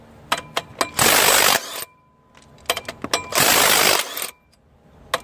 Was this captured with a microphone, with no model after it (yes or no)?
yes